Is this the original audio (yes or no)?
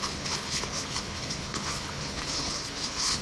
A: no